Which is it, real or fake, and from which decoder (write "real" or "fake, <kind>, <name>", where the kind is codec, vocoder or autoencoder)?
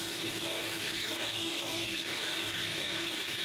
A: fake, codec, DAC